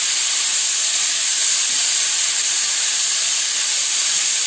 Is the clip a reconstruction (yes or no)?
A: no